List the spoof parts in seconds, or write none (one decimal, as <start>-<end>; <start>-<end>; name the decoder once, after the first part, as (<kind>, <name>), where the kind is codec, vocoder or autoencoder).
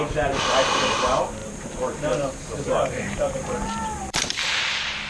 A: 1.4-4.5 (vocoder, BigVGAN v2)